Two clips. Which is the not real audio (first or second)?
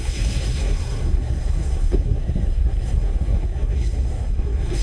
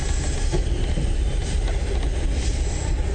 first